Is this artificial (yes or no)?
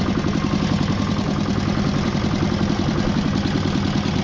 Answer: no